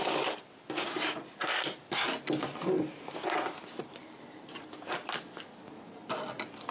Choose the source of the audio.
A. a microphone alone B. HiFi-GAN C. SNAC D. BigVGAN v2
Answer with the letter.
A